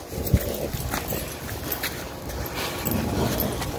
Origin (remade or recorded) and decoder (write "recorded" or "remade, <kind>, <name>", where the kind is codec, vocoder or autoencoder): recorded